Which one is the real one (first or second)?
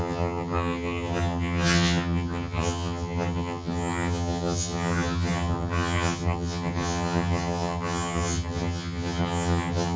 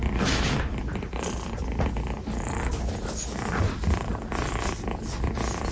second